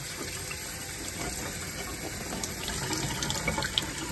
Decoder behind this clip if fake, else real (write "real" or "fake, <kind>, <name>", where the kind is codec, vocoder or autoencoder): real